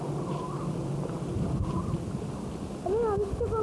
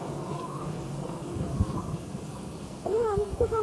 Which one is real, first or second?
first